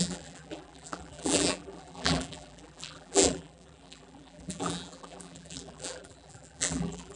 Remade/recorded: remade